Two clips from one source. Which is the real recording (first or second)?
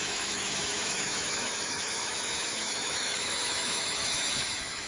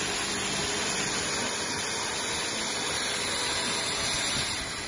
second